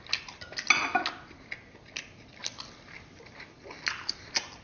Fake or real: real